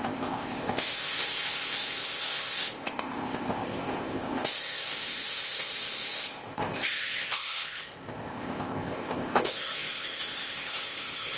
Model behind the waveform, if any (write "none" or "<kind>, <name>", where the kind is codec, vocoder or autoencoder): codec, ZipCodec